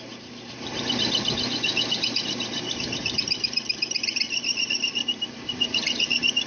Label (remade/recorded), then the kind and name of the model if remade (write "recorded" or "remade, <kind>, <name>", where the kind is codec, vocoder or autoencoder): remade, vocoder, BigVGAN v2